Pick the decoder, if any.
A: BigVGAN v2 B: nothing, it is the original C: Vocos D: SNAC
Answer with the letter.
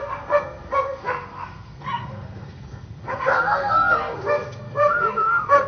D